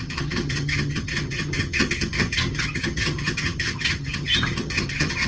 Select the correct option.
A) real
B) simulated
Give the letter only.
B